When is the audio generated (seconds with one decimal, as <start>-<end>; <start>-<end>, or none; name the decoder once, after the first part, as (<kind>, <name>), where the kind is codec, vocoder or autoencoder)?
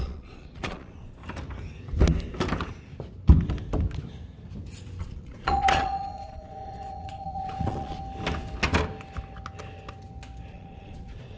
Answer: 0.0-1.2 (vocoder, Vocos); 5.0-8.0; 10.5-11.4